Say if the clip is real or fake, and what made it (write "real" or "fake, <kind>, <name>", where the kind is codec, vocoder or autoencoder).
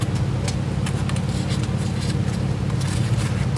real